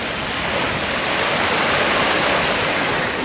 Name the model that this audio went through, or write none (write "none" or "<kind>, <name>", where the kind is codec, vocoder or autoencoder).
none